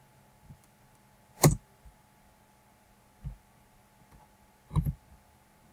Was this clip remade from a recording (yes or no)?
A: no